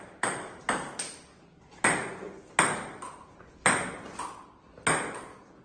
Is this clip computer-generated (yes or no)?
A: no